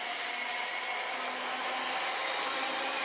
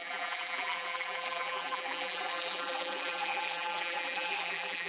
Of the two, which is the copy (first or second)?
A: second